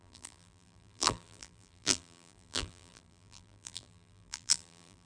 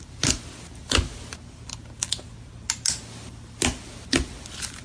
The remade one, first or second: first